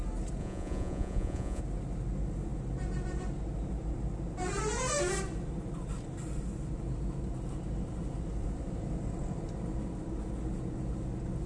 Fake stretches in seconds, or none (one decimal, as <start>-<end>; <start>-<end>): 0.4-1.6